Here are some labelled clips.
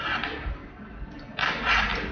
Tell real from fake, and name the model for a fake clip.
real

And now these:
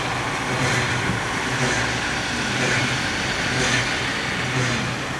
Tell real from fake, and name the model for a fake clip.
real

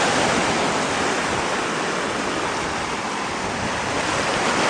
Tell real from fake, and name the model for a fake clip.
real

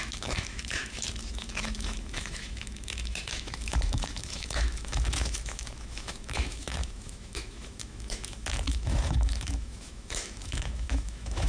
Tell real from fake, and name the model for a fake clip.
fake, autoencoder, DAC-VAE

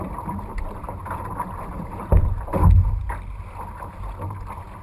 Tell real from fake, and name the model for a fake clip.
real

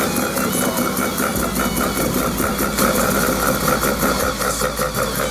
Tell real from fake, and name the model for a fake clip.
real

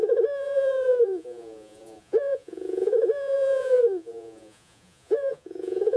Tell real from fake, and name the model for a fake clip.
fake, vocoder, Vocos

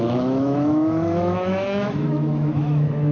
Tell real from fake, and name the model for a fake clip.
fake, autoencoder, DAC-VAE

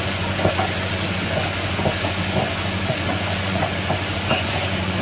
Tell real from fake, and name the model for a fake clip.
fake, vocoder, Vocos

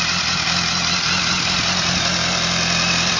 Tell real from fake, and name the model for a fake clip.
real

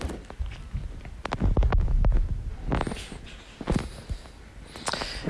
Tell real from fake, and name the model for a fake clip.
real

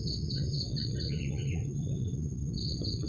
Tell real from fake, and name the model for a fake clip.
fake, vocoder, WaveNeXt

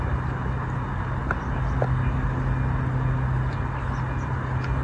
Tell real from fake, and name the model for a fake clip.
real